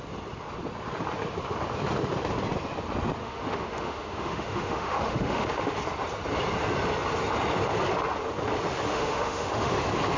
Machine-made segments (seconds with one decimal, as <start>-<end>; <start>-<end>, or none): 3.2-5.8; 8.9-9.7